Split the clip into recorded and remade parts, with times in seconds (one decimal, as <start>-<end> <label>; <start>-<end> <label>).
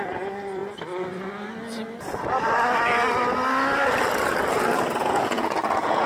0.0-5.0 recorded; 5.0-6.1 remade